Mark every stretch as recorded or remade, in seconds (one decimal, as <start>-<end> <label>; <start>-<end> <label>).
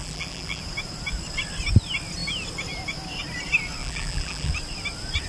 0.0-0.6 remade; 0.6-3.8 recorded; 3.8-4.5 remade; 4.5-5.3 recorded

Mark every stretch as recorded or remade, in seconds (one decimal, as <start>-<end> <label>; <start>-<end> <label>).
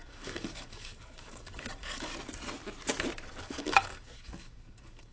0.0-2.1 remade; 2.1-3.4 recorded; 3.4-5.1 remade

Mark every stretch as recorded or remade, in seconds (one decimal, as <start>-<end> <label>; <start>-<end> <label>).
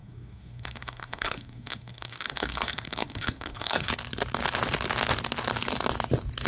0.0-3.9 remade; 3.9-6.5 recorded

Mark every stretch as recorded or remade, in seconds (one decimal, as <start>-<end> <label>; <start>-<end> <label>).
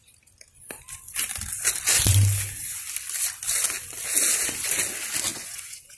0.0-5.3 recorded; 5.3-6.0 remade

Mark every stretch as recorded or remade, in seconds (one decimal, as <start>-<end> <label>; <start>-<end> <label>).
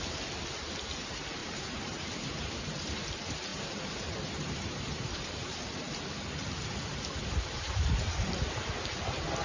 0.0-1.4 recorded; 1.4-3.1 remade; 3.1-3.5 recorded; 3.5-6.0 remade; 6.0-7.1 recorded; 7.1-8.9 remade; 8.9-9.4 recorded